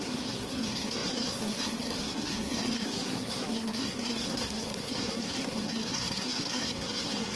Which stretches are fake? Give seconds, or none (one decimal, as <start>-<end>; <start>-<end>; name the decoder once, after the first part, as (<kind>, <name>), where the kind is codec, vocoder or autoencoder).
0.0-7.3 (codec, SNAC)